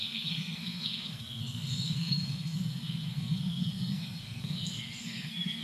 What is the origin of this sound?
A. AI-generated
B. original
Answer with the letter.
A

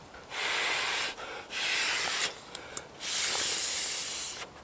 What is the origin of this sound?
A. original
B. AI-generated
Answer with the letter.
A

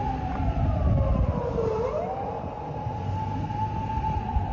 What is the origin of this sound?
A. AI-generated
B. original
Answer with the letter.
B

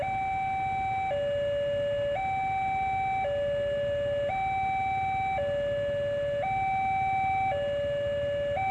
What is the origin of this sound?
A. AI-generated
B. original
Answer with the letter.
B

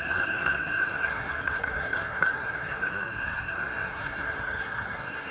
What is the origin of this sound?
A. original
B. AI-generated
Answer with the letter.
B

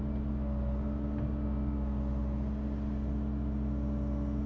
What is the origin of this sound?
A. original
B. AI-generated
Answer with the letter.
A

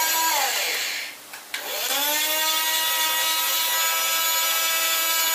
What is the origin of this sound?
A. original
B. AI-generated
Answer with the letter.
A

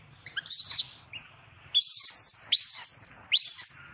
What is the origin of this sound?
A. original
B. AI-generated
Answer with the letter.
A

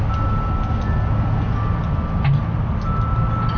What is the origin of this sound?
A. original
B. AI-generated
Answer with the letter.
A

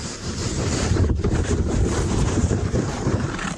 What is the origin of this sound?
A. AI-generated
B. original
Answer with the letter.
A